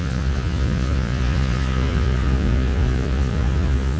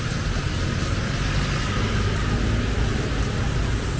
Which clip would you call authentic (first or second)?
second